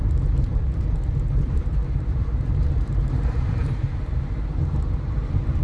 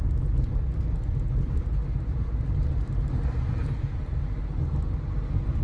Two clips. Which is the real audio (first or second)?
second